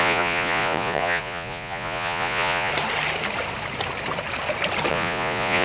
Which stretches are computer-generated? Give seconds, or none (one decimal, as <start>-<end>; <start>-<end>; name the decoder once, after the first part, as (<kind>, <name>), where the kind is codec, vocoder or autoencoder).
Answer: 0.0-2.7 (vocoder, Vocos); 4.9-5.6